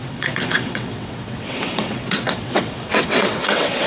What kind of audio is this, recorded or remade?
remade